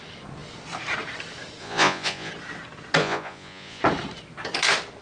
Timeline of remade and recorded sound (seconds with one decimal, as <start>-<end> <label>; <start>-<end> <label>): 0.0-1.6 recorded; 1.6-2.3 remade; 2.3-3.0 recorded; 3.0-3.8 remade; 3.8-5.0 recorded